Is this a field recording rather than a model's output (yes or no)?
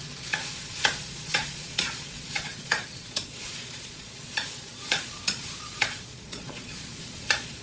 no